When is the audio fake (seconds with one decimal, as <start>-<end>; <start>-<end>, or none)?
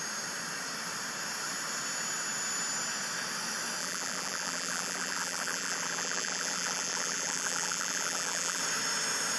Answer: 3.8-8.6